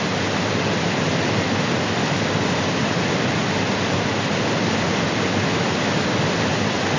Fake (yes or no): no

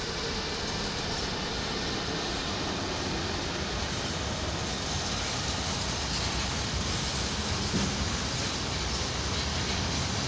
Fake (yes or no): no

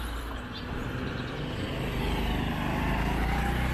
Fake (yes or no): no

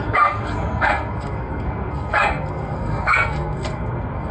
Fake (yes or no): yes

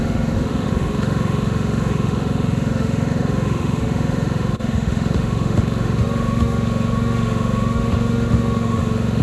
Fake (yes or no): yes